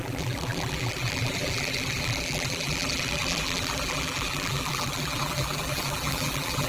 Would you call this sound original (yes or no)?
no